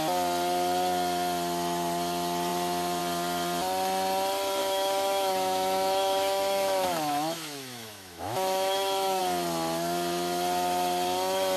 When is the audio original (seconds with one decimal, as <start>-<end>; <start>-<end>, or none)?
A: 0.0-4.6; 9.2-11.6

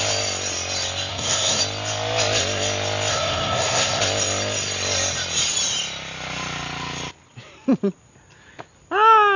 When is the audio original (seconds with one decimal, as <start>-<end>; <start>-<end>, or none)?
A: 0.0-1.1; 1.6-3.1; 4.0-9.4

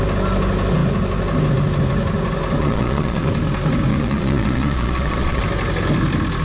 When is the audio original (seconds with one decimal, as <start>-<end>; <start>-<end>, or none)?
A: 0.0-2.6; 3.3-3.9; 5.4-6.4

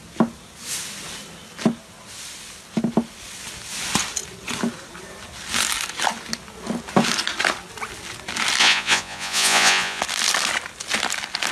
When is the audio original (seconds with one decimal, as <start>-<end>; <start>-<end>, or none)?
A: 0.0-8.6; 10.0-11.5

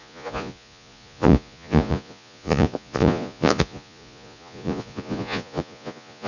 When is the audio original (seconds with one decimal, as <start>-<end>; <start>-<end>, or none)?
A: none

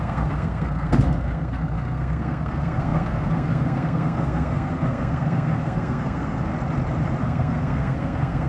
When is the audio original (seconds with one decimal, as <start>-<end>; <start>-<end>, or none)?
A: 6.5-7.2

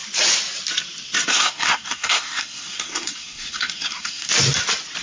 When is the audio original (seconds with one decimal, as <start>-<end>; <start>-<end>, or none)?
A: 0.0-1.3; 4.3-5.0

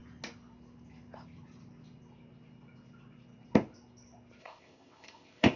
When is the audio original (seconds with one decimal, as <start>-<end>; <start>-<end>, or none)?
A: 0.0-4.4